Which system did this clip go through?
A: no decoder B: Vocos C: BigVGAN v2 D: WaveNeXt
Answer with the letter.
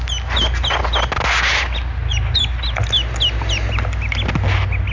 A